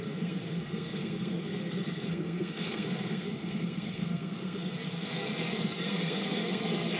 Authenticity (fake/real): fake